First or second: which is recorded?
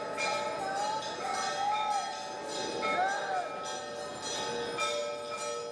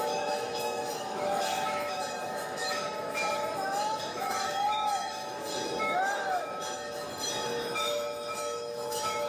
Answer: first